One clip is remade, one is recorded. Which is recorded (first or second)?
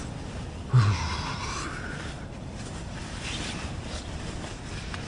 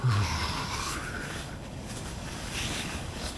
first